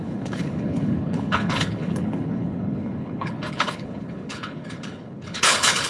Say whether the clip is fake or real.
fake